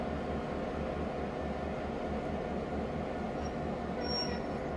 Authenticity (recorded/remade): recorded